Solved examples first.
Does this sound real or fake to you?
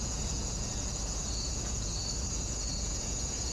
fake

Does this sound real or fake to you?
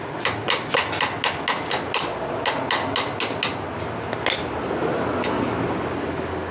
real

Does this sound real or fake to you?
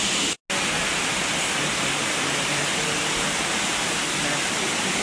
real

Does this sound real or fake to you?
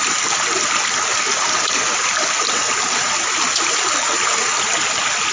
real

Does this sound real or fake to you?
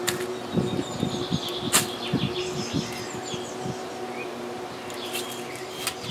real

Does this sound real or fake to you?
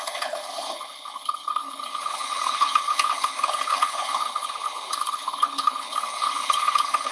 fake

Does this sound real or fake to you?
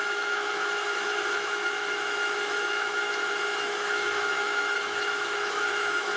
fake